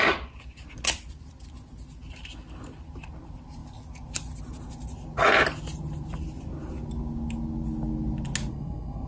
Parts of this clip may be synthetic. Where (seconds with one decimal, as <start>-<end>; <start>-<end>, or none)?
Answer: 8.5-9.1